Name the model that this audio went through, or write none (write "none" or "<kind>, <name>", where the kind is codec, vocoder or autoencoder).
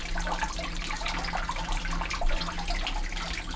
none